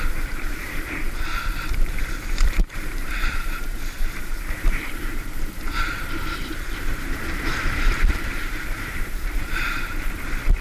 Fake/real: fake